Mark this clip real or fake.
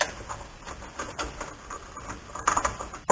real